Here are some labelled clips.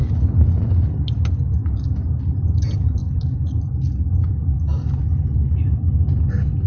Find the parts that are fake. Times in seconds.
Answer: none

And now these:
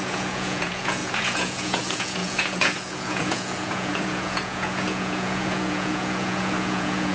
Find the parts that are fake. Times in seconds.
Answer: 0.0-7.1 (vocoder, Vocos)